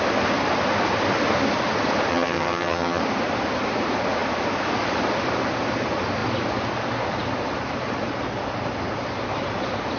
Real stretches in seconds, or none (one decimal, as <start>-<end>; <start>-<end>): 0.0-2.1; 3.0-10.0